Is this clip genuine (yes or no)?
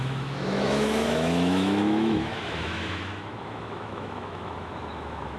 no